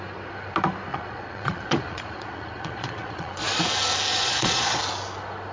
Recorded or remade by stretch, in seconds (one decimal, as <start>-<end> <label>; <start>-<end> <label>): 0.0-0.9 recorded; 0.9-3.6 remade; 3.6-4.1 recorded; 4.1-4.8 remade; 4.8-5.5 recorded